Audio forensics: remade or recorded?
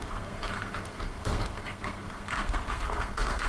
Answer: remade